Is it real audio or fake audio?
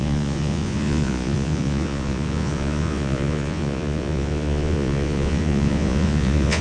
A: fake